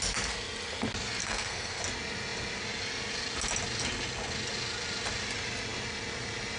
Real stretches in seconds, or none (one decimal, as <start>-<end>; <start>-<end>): 0.0-1.2; 1.8-6.6